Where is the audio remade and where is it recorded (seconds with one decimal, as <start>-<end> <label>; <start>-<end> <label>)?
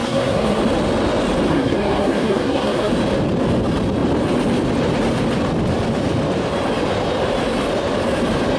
0.0-0.6 remade; 0.6-1.5 recorded; 1.5-2.9 remade; 2.9-8.6 recorded